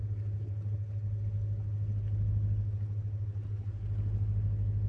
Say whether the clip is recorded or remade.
recorded